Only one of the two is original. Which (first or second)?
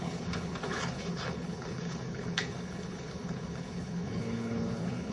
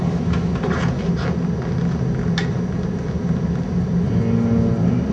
second